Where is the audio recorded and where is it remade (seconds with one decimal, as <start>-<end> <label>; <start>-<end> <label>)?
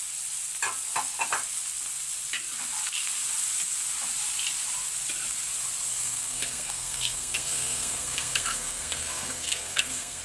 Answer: 0.0-5.9 recorded; 5.9-10.2 remade